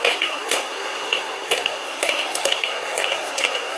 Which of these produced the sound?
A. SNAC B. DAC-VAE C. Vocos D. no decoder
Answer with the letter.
A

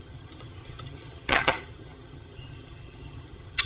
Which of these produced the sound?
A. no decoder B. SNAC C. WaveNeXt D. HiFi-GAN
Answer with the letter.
D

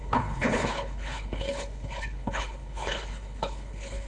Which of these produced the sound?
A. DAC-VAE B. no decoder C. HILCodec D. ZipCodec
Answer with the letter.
C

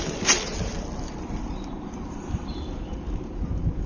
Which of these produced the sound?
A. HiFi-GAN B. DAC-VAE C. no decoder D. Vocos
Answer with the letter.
C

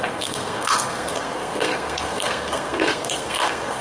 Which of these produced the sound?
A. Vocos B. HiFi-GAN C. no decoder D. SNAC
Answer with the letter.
D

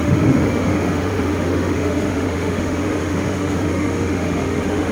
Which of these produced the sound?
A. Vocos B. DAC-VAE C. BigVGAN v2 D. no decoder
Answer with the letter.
B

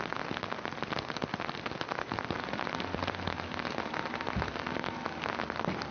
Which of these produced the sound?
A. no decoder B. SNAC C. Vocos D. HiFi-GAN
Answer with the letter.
A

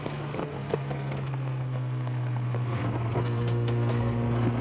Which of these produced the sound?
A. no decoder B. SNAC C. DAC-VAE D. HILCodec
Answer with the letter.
B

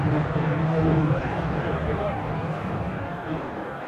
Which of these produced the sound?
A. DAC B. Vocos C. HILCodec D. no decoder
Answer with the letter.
A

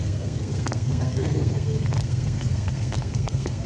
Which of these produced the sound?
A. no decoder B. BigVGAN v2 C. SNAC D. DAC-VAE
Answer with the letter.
C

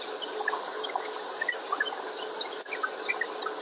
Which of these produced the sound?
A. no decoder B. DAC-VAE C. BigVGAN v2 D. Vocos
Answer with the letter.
A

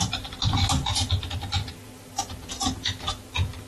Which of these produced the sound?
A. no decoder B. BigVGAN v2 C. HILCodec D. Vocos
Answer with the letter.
A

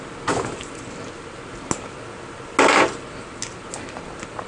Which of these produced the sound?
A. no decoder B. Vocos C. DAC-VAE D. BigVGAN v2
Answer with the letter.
A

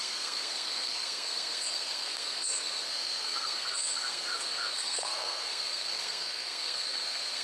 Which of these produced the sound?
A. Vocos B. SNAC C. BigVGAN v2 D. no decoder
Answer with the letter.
B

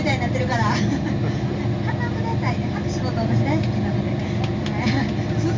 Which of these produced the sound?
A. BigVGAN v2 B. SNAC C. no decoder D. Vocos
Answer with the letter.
C